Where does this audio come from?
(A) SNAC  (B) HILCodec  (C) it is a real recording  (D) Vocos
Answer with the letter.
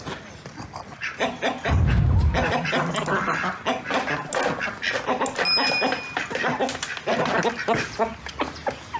C